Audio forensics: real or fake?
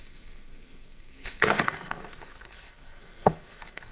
fake